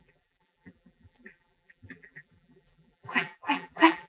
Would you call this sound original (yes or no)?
no